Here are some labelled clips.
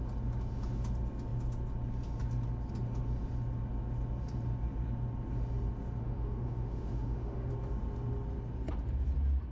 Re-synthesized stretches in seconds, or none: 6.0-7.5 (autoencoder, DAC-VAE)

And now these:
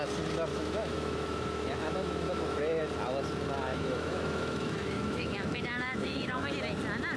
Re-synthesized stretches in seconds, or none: 0.5-2.8 (autoencoder, DAC-VAE); 3.7-6.5

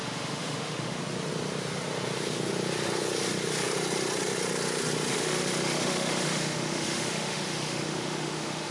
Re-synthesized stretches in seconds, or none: 0.0-1.0 (autoencoder, DAC-VAE); 5.1-8.7

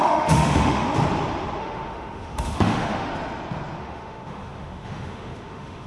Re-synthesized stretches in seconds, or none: 0.0-0.8 (autoencoder, DAC-VAE); 1.6-3.1; 3.8-5.9

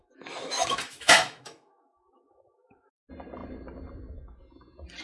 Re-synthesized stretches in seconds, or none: 0.0-3.0 (autoencoder, DAC-VAE)

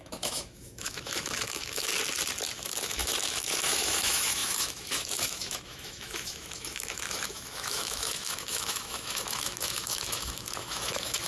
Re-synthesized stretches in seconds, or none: 0.0-1.9 (autoencoder, DAC-VAE); 2.5-11.3

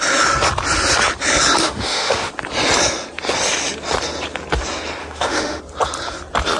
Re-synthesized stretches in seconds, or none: 1.6-2.3 (autoencoder, DAC-VAE); 5.0-5.6